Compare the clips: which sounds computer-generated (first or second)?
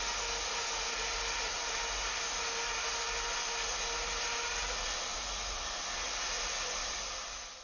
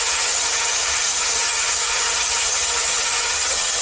second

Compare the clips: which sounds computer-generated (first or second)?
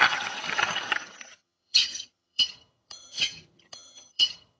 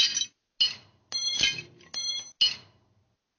first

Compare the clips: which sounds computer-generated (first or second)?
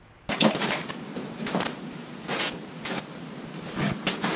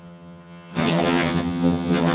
second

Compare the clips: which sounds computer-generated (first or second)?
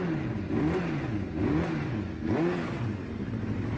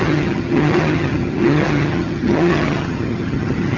second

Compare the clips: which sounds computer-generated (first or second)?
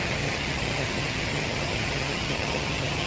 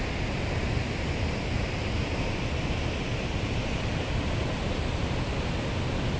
first